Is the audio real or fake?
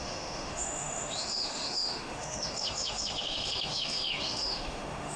fake